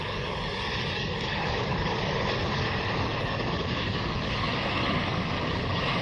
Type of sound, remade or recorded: remade